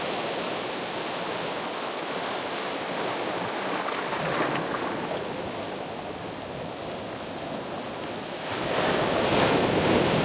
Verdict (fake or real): real